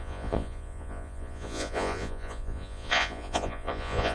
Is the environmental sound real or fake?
fake